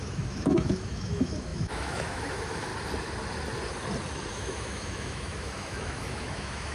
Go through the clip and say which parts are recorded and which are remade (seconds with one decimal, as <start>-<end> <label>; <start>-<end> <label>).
0.0-2.7 remade; 2.7-4.3 recorded; 4.3-6.7 remade